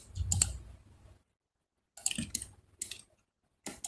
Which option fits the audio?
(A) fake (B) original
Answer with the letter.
B